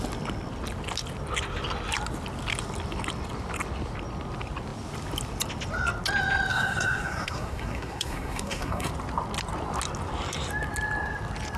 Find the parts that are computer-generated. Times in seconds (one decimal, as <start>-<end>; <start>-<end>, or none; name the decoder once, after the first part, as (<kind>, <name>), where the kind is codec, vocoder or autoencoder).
6.5-8.9 (codec, SNAC)